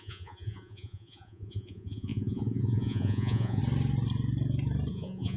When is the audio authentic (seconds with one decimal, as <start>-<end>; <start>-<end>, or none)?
3.6-4.9